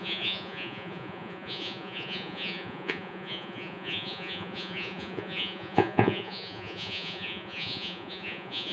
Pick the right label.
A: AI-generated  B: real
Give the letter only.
A